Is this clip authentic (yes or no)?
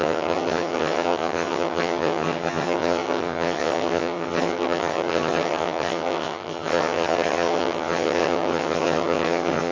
no